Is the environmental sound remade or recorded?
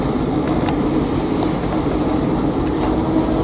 recorded